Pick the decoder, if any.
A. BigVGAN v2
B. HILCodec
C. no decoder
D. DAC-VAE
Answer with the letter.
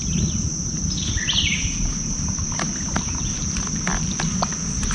C